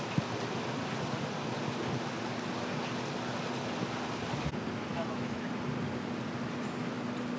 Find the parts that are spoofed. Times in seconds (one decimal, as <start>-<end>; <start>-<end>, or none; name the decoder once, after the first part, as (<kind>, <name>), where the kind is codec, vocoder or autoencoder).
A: 4.9-5.5 (autoencoder, DAC-VAE)